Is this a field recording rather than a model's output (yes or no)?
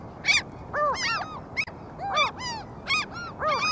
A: yes